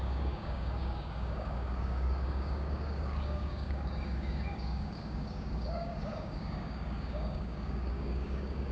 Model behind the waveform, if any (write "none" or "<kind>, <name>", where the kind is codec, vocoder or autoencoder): codec, DAC